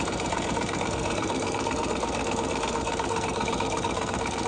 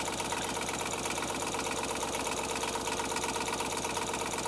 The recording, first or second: second